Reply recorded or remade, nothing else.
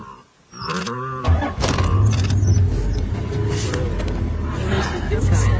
recorded